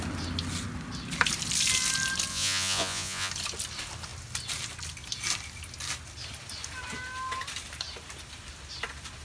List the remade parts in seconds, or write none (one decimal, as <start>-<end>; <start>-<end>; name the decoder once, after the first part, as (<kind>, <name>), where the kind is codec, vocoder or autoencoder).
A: 2.3-3.3 (vocoder, Vocos)